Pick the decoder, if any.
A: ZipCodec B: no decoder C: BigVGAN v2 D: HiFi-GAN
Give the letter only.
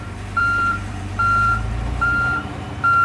C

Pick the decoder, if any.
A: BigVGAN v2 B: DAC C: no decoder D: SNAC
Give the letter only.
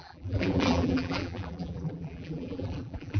A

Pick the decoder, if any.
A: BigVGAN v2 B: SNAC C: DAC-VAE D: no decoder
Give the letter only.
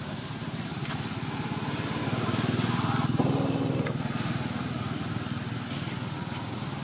D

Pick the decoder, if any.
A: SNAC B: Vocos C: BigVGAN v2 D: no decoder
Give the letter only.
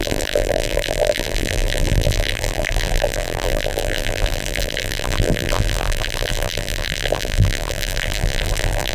C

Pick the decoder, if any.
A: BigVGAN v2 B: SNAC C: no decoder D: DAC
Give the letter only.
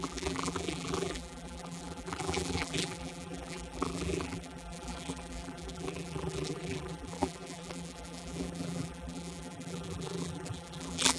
A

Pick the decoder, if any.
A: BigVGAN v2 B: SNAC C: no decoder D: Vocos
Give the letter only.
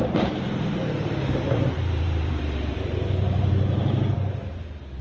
A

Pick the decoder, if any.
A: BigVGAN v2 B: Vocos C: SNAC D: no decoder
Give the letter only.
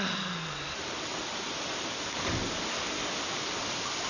D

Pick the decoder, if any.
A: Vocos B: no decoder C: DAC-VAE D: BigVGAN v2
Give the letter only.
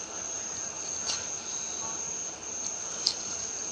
B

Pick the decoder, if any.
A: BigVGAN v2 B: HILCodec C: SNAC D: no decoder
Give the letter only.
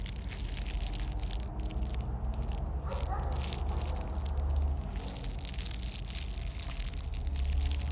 D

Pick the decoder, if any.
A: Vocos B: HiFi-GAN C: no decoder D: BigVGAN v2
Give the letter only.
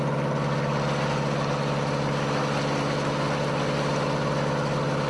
C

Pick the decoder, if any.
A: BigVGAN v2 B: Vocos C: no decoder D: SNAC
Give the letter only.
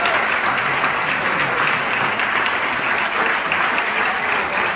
A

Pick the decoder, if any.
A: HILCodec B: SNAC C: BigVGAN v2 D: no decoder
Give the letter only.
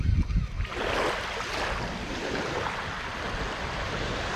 D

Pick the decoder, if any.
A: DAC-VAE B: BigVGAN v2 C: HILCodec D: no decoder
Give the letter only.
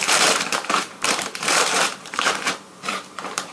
B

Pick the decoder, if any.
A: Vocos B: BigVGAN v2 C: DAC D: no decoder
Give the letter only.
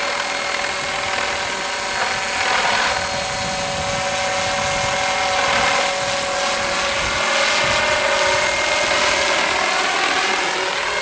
D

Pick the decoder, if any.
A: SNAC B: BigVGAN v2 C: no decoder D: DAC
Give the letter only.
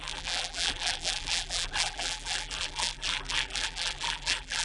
B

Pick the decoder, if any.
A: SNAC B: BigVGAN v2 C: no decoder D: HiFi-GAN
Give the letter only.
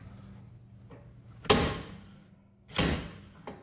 C